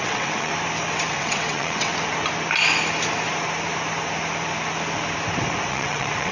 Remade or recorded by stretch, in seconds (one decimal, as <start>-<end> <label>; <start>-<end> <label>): 0.0-0.5 remade; 0.5-1.1 recorded; 1.1-1.9 remade; 1.9-5.7 recorded; 5.7-6.3 remade